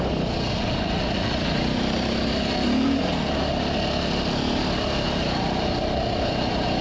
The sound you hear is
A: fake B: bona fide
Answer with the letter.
B